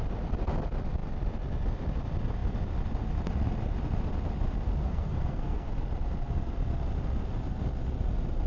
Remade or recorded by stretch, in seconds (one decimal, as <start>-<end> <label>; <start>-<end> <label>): 0.0-4.8 recorded; 4.8-5.7 remade; 5.7-8.5 recorded